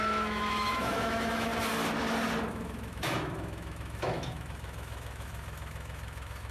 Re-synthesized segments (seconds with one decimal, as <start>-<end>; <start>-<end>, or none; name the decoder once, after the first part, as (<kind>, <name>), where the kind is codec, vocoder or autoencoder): 0.0-1.5 (autoencoder, DAC-VAE); 2.5-6.5